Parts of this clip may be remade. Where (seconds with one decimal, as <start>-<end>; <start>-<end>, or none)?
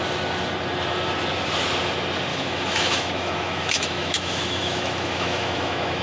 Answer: 2.3-6.0